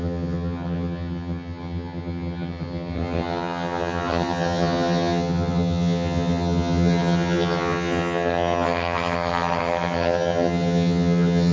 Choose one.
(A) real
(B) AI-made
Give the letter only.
B